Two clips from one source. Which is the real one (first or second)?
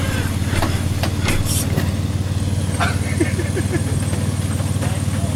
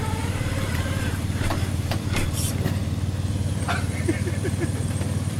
first